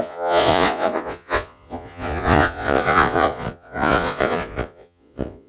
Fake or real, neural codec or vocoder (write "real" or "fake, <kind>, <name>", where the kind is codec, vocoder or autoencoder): fake, vocoder, Vocos